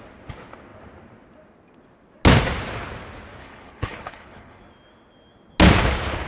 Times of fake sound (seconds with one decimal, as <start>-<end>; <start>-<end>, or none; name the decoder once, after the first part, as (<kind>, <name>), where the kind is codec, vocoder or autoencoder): 3.4-4.6 (codec, HILCodec)